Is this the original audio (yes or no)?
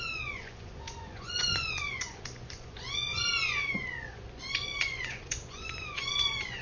no